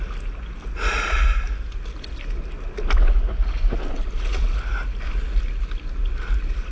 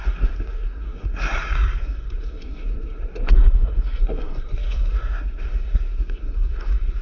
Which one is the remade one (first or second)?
second